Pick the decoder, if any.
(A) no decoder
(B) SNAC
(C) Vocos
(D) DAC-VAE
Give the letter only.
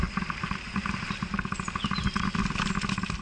A